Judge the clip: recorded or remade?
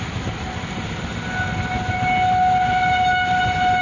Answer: recorded